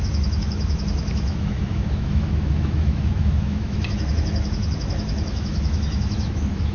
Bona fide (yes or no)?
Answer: no